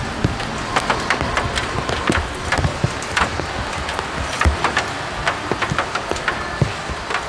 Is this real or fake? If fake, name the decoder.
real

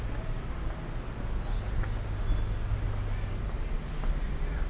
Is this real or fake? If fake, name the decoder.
real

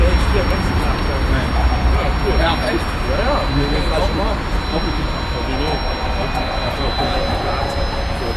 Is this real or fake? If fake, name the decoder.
real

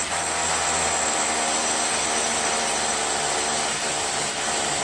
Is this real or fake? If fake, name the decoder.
real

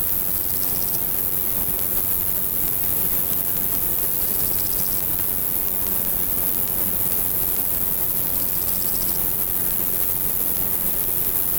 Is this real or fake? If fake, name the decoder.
real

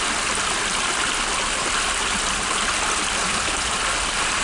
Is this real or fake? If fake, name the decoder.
real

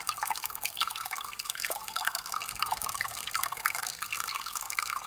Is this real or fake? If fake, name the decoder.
fake, codec, SNAC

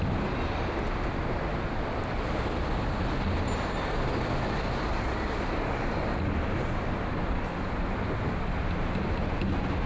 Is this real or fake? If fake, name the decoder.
real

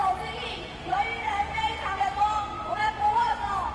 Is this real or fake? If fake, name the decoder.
real